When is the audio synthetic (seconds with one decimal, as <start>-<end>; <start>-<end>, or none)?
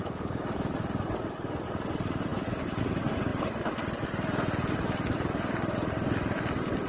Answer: none